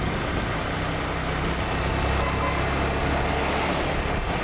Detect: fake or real real